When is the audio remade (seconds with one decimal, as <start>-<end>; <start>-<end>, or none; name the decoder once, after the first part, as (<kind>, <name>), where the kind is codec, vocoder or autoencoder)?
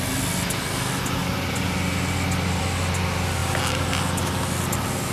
none